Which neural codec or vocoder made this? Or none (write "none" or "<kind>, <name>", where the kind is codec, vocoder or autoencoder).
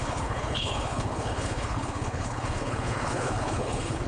codec, HILCodec